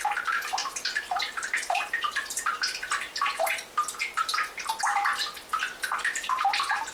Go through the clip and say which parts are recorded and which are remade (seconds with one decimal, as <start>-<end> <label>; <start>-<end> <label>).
0.0-0.6 recorded; 0.6-3.4 remade; 3.4-4.0 recorded; 4.0-4.7 remade; 4.7-6.9 recorded